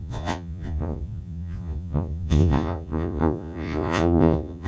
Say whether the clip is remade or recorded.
remade